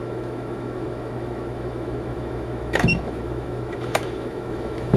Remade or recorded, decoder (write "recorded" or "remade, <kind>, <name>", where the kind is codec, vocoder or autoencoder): remade, autoencoder, DAC-VAE